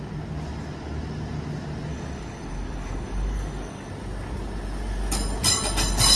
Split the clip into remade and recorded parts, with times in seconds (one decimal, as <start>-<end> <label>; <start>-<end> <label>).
0.0-1.9 recorded; 1.9-3.9 remade; 3.9-6.2 recorded